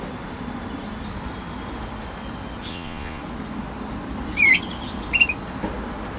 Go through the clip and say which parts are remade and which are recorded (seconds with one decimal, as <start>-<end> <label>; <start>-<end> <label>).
0.0-2.7 recorded; 2.7-3.2 remade; 3.2-6.2 recorded